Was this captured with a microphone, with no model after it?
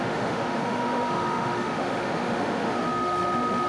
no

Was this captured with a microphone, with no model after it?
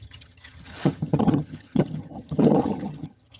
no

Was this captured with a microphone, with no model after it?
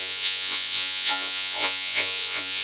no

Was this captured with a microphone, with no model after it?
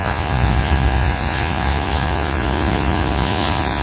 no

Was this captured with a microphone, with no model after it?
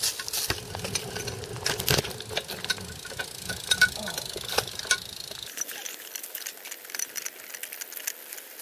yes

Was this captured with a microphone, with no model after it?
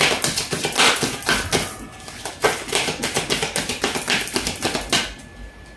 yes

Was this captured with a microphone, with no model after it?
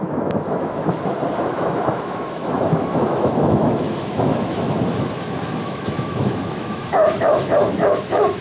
no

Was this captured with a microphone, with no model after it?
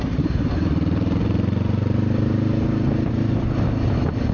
yes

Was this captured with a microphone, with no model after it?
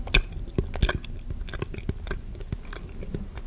yes